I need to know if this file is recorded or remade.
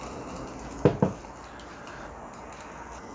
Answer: recorded